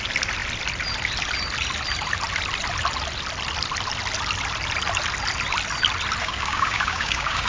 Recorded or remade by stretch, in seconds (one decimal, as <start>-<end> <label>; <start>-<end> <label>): 0.0-6.2 recorded; 6.2-7.5 remade